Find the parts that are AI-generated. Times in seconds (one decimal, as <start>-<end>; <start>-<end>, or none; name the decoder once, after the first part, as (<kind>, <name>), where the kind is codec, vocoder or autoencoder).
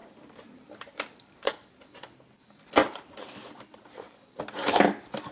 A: 0.0-1.5 (vocoder, BigVGAN v2); 2.8-4.4